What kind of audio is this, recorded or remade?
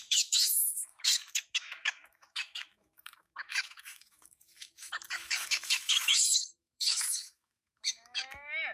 remade